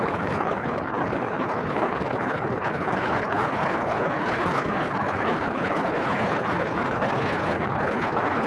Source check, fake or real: fake